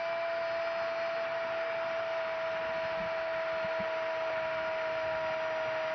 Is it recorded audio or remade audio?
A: recorded